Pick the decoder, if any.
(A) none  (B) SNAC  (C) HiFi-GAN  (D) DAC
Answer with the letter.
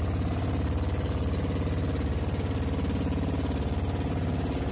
A